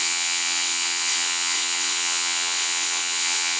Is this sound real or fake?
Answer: fake